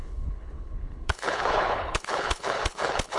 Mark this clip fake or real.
fake